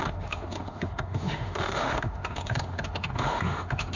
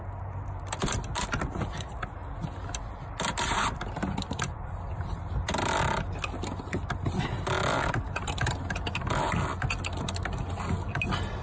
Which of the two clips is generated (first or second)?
first